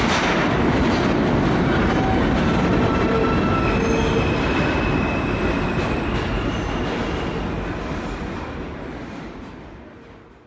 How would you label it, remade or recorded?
recorded